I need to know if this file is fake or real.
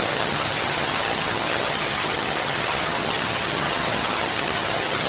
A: fake